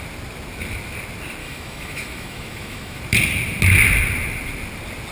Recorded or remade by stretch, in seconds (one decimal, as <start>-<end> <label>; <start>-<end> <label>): 0.0-1.4 recorded; 1.4-3.0 remade; 3.0-5.1 recorded